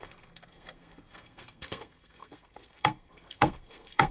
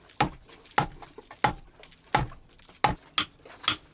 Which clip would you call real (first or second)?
second